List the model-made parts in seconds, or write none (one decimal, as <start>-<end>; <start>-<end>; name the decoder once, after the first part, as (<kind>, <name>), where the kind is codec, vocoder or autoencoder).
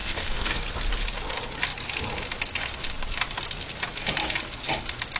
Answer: 0.0-0.6 (codec, SNAC)